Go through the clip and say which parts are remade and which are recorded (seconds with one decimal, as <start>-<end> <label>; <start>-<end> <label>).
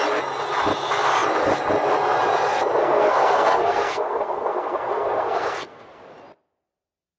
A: 0.0-2.8 recorded; 2.8-6.0 remade; 6.0-7.2 recorded